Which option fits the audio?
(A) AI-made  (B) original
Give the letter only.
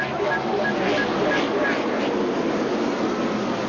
B